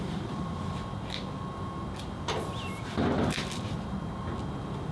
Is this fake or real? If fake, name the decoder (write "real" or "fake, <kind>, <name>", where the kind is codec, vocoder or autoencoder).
real